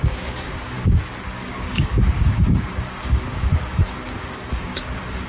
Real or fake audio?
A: fake